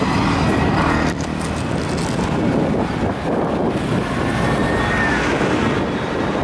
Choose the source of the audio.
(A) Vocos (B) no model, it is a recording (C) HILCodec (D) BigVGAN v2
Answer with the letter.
B